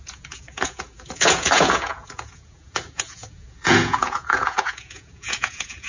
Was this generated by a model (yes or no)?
yes